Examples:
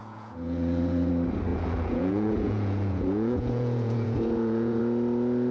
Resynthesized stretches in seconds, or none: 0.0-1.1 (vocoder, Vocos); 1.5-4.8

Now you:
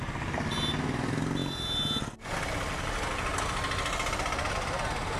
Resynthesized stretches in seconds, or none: none

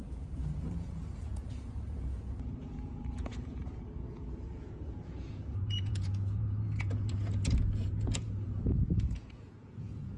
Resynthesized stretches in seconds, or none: 0.0-10.2 (vocoder, Vocos)

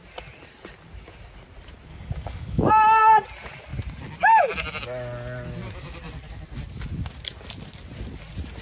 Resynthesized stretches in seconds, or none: 1.9-2.7 (codec, DAC)